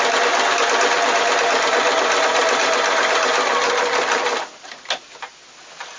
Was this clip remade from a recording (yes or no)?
no